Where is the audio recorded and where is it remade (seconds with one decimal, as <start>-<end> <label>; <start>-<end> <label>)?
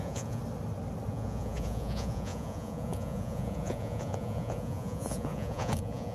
0.0-0.4 remade; 0.4-1.1 recorded; 1.1-6.1 remade